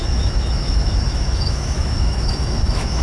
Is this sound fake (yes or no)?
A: yes